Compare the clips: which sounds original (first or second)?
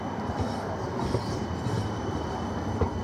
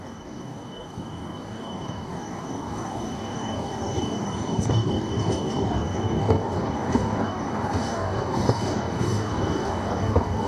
first